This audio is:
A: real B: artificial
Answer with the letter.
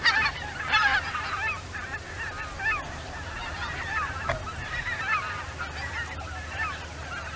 A